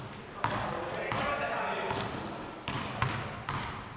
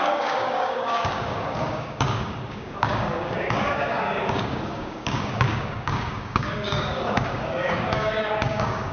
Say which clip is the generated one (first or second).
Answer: second